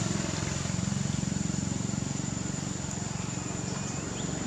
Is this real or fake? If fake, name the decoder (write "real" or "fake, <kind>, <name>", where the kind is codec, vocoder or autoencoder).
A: real